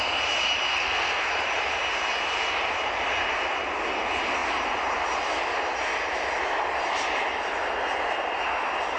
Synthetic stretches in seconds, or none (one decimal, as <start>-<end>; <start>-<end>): 0.7-1.3